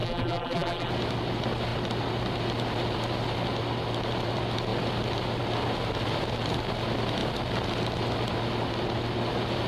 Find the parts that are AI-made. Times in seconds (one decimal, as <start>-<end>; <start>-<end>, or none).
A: 0.0-0.9